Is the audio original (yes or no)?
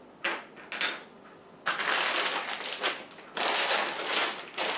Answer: yes